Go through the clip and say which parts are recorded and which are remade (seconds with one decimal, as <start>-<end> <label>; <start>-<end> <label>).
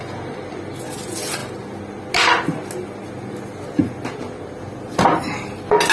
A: 0.0-5.9 recorded